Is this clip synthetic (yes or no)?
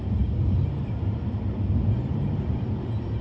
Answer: no